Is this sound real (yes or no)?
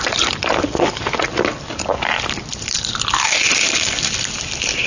no